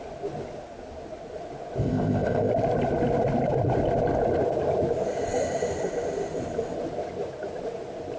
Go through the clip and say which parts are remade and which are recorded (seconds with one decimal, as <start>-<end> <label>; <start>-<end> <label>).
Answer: 0.0-1.8 recorded; 1.8-2.5 remade; 2.5-8.2 recorded